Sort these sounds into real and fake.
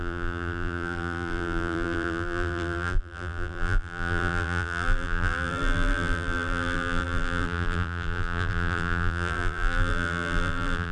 fake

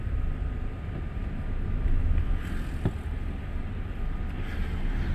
real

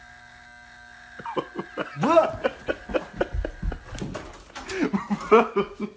real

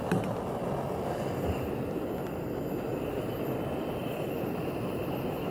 real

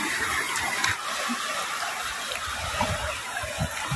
fake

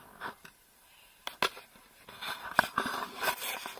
fake